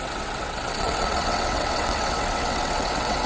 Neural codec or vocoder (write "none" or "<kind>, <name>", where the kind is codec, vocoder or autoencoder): vocoder, WaveNeXt